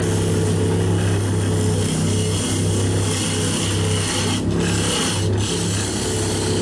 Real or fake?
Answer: real